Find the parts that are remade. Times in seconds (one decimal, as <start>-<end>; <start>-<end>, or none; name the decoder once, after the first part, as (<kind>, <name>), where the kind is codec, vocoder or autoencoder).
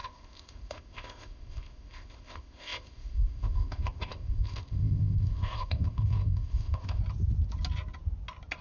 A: 0.0-7.0 (codec, ZipCodec)